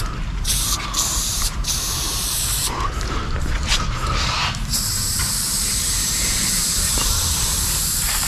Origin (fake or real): fake